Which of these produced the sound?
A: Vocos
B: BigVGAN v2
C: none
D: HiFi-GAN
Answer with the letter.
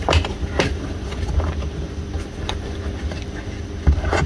C